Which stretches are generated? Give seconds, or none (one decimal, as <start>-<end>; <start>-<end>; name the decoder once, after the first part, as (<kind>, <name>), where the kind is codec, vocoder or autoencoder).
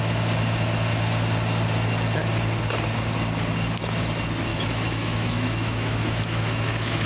4.5-7.1 (autoencoder, DAC-VAE)